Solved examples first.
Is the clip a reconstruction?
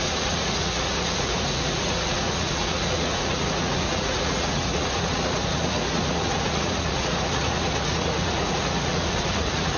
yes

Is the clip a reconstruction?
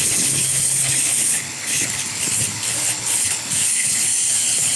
yes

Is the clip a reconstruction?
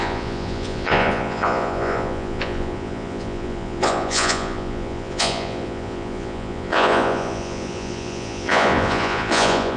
yes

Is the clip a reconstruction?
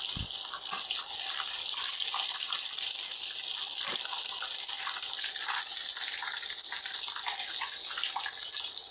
no